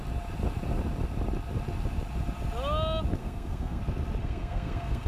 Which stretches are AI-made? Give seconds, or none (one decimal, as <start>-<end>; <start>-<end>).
3.2-3.8; 4.2-5.1